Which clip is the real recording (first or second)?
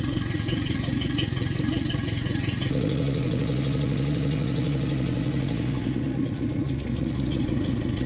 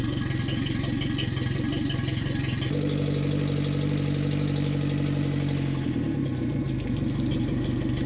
second